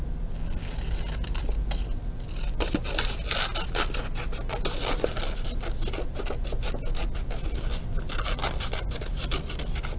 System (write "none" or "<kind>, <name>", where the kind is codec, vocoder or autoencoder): none